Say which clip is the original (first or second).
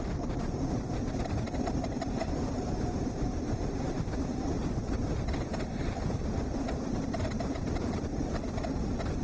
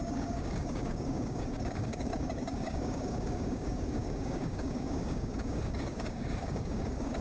first